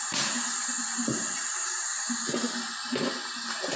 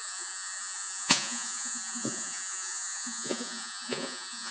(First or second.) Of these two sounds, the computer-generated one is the second